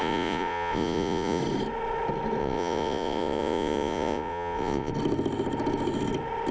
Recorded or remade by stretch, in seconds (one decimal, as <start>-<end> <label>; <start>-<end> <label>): 0.0-1.4 remade; 1.4-2.4 recorded; 2.4-4.9 remade; 4.9-6.5 recorded